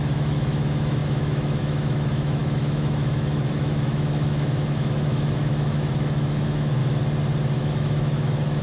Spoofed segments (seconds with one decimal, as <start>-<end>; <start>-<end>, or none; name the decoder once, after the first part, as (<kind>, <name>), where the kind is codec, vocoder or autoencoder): 0.0-6.8 (autoencoder, DAC-VAE); 7.6-8.6